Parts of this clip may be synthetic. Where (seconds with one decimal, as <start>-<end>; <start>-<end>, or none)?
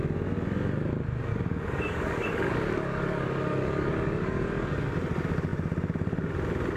1.3-4.9